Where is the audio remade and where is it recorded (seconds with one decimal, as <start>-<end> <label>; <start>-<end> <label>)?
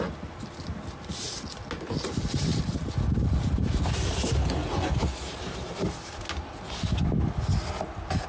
0.0-8.3 recorded